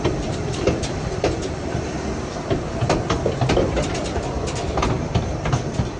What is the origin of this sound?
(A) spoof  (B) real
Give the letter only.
B